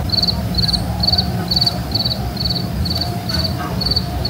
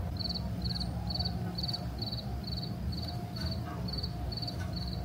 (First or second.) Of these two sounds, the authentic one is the second